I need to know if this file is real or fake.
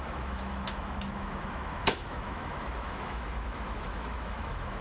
fake